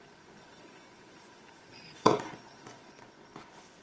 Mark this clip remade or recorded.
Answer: remade